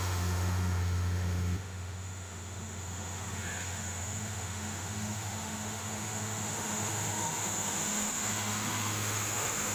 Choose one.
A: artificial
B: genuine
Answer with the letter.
A